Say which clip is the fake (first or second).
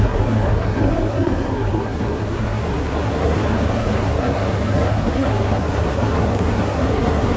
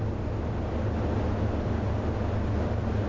first